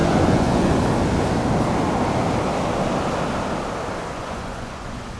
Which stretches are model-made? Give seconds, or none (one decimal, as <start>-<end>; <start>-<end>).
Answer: 0.0-0.8; 4.1-5.2